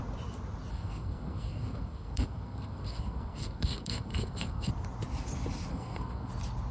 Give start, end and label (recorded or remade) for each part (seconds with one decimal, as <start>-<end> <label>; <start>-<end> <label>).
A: 0.0-0.7 recorded; 0.7-4.7 remade; 4.7-5.7 recorded; 5.7-6.3 remade; 6.3-6.7 recorded